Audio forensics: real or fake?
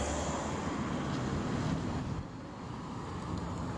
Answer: real